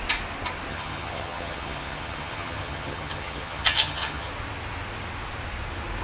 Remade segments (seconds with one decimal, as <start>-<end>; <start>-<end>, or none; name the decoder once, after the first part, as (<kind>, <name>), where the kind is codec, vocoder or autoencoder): 0.7-4.3 (vocoder, HiFi-GAN)